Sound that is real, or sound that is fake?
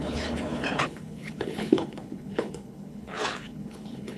fake